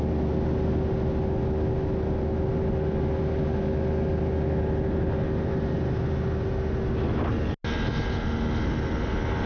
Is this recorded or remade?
recorded